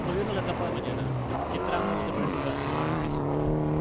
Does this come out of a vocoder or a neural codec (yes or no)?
no